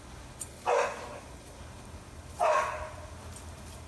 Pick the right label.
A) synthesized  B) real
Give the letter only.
B